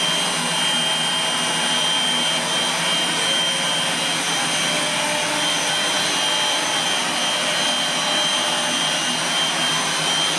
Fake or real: real